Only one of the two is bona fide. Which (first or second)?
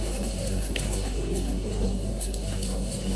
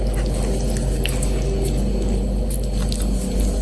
second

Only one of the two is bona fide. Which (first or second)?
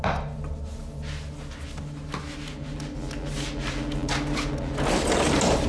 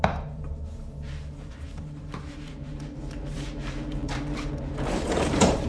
first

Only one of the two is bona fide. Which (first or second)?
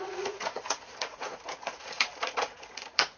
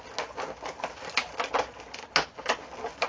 second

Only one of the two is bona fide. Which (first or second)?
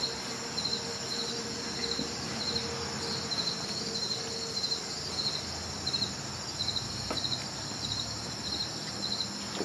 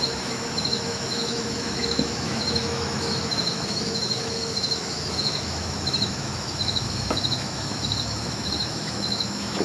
first